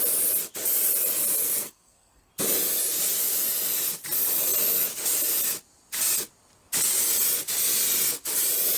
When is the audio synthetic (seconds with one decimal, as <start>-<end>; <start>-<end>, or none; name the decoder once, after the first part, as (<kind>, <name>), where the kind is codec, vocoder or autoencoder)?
1.4-2.3 (codec, SNAC)